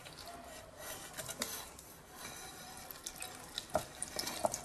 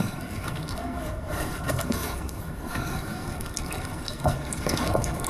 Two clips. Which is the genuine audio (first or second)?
first